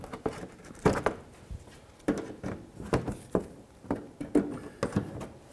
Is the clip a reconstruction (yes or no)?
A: no